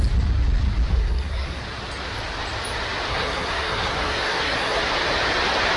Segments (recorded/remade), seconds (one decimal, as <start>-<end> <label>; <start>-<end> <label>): 0.0-0.9 recorded; 0.9-1.6 remade; 1.6-3.1 recorded; 3.1-4.8 remade; 4.8-5.8 recorded